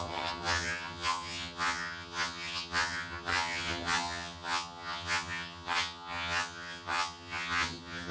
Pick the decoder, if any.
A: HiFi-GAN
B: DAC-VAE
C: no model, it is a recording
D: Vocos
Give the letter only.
A